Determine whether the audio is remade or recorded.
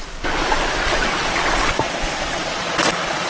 recorded